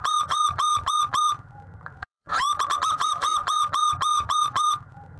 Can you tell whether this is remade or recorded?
remade